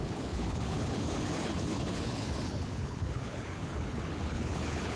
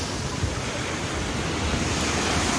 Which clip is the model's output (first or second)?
first